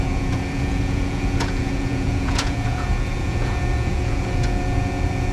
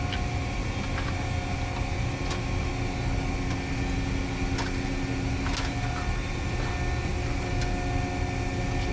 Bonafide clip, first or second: second